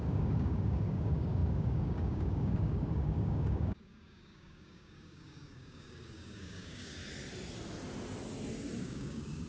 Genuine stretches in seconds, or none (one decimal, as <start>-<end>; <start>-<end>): 7.0-8.8